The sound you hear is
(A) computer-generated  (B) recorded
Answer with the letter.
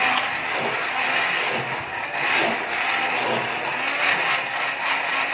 B